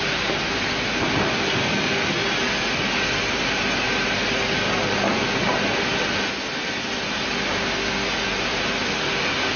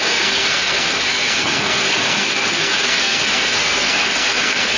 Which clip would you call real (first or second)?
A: first